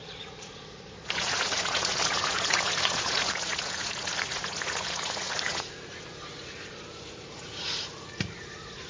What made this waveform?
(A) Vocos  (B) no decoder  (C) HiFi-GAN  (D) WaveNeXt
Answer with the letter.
A